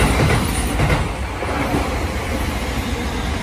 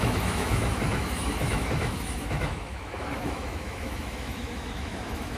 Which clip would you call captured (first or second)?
first